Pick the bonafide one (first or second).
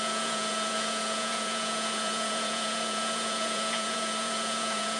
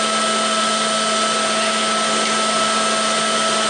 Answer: second